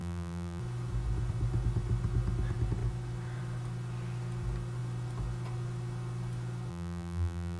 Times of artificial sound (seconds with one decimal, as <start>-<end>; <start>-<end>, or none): 0.0-0.6; 6.7-7.6